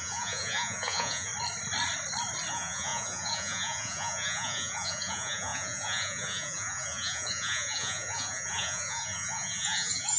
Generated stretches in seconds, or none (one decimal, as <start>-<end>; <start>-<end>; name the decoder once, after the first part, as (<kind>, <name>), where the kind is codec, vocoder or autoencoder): 0.0-1.3 (vocoder, Vocos); 2.5-10.2